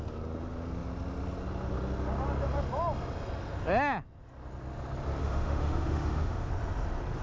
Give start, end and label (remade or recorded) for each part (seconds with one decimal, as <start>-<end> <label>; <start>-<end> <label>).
0.0-5.2 recorded; 5.2-6.5 remade; 6.5-7.2 recorded